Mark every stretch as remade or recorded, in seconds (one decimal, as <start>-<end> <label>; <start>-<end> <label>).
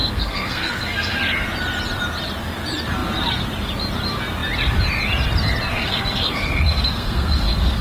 0.0-1.2 remade; 1.2-5.7 recorded; 5.7-7.8 remade